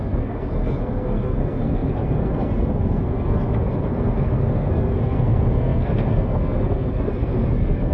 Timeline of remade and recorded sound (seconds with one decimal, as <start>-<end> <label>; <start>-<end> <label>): 0.0-7.9 remade